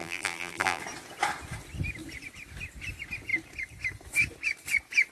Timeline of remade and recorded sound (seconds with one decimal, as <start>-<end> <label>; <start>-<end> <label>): 0.0-0.8 remade; 0.8-5.1 recorded